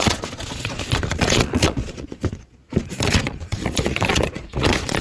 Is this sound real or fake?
fake